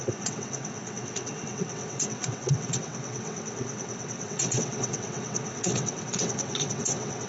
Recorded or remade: remade